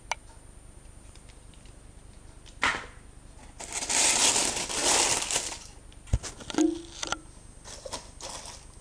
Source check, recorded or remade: recorded